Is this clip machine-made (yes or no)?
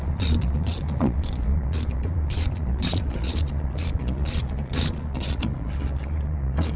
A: yes